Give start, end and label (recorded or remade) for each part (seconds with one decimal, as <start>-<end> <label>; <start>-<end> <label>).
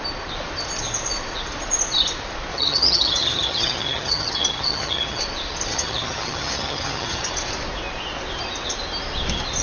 0.0-2.5 recorded; 2.5-5.2 remade; 5.2-5.7 recorded; 5.7-7.3 remade; 7.3-9.6 recorded